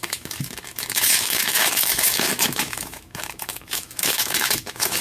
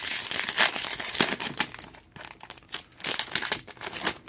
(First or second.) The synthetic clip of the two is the first